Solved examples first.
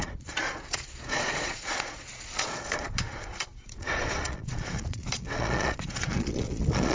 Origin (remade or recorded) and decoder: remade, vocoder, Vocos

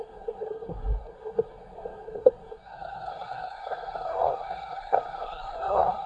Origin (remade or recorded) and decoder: remade, codec, SNAC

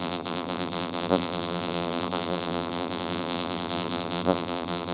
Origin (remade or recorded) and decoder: remade, vocoder, BigVGAN v2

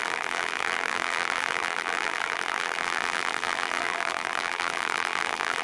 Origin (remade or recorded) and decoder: remade, vocoder, BigVGAN v2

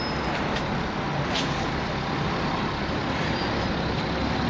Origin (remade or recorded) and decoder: recorded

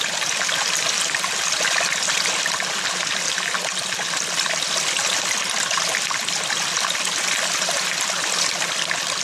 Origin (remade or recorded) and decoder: recorded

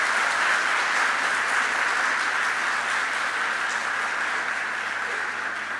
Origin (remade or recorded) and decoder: recorded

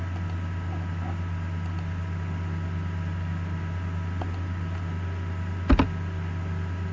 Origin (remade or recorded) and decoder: recorded